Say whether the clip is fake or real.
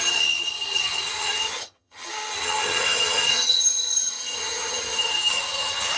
fake